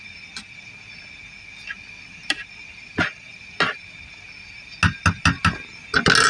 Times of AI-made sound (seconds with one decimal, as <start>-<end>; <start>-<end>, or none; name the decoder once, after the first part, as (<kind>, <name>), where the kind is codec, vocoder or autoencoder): none